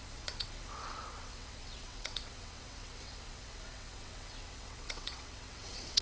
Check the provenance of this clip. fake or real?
fake